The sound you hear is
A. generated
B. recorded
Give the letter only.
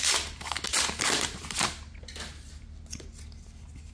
B